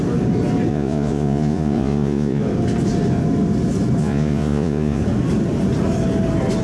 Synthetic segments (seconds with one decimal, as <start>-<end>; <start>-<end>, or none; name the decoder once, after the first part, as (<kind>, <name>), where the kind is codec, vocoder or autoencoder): 0.7-2.4 (vocoder, Vocos); 4.0-5.0